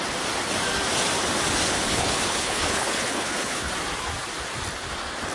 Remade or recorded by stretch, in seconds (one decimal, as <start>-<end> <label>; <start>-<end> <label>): 0.0-1.9 recorded; 1.9-3.7 remade; 3.7-5.3 recorded